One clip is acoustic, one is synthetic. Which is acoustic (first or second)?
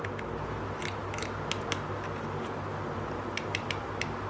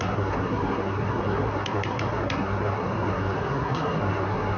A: first